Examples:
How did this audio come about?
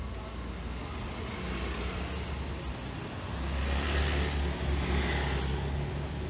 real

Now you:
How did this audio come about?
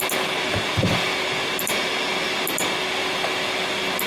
real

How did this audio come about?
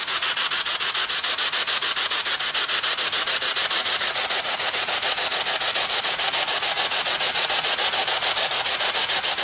fake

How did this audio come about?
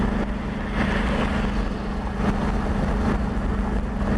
real